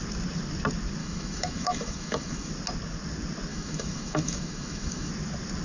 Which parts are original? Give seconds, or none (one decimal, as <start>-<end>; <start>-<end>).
0.0-1.0; 2.5-3.5; 5.1-5.6